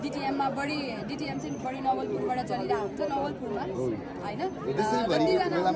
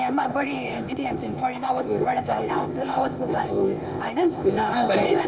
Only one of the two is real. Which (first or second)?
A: first